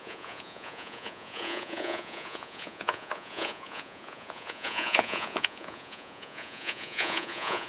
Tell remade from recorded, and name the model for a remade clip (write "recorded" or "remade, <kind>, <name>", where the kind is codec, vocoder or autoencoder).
remade, vocoder, Vocos